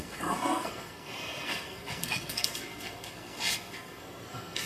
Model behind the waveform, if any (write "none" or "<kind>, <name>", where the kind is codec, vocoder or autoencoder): codec, SNAC